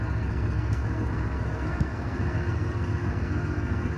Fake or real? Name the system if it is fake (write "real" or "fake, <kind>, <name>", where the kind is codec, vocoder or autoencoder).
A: fake, codec, SNAC